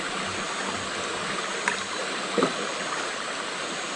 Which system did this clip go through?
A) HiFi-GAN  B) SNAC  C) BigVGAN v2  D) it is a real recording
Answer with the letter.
D